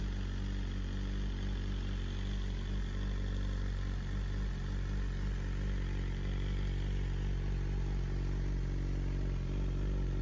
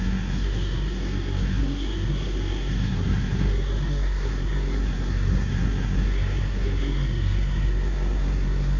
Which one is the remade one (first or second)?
second